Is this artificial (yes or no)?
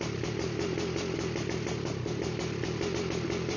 no